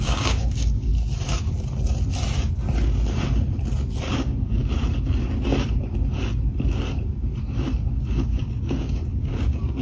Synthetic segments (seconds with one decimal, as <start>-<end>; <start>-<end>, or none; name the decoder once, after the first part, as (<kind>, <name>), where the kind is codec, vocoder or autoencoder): 0.0-0.9 (codec, DAC); 4.1-4.6; 7.9-9.8